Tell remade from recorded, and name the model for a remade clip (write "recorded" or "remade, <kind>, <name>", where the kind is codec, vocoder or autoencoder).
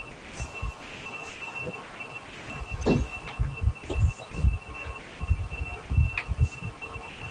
recorded